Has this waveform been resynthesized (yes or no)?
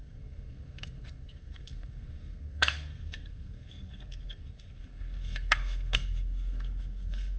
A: yes